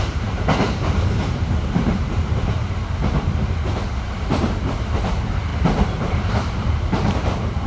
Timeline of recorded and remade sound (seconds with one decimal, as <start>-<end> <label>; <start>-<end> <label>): 0.0-2.8 remade; 2.8-3.9 recorded; 3.9-7.7 remade